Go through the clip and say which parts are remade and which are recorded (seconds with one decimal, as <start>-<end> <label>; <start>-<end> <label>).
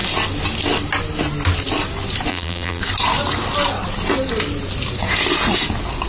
0.0-2.3 recorded; 2.3-2.8 remade; 2.8-6.1 recorded